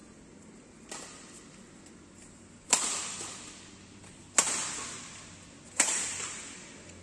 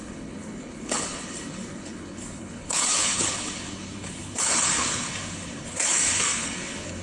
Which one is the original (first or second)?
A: first